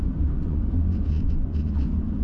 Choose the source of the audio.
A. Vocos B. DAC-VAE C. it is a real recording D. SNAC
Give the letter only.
A